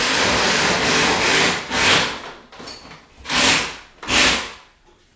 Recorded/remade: recorded